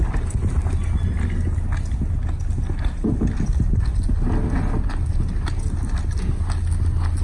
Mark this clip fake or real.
real